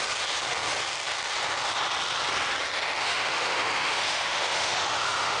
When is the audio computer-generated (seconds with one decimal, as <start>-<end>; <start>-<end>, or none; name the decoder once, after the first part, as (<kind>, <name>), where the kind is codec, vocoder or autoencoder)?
3.0-5.4 (autoencoder, DAC-VAE)